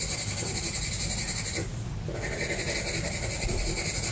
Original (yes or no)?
yes